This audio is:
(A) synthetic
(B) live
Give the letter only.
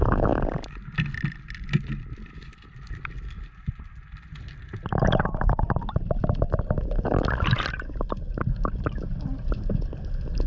B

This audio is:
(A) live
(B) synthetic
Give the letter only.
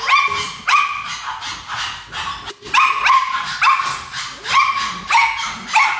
A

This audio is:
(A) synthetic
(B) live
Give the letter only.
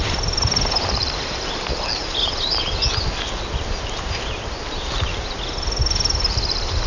B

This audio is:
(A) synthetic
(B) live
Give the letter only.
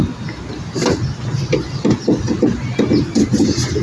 B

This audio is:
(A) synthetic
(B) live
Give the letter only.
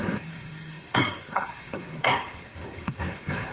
A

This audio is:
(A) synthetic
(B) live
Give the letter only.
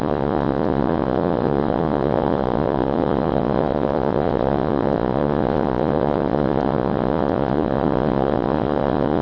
A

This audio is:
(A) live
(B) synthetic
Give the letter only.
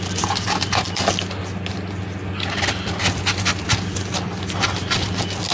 A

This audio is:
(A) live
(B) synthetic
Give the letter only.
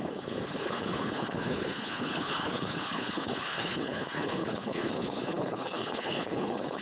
B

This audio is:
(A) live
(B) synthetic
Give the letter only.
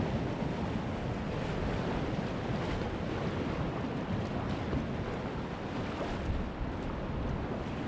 A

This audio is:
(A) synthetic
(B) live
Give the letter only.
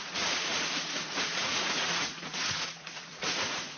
A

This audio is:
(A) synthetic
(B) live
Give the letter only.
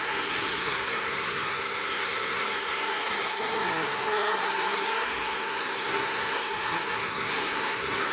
A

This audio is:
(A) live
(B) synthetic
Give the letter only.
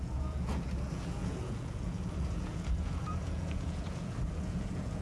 B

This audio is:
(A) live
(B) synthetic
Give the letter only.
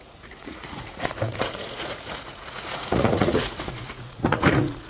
B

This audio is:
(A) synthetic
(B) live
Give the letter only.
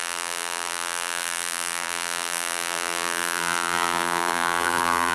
A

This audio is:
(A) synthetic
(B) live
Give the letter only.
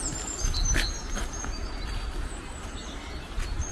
B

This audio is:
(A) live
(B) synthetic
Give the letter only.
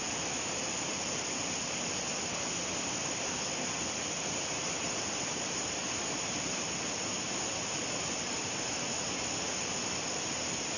A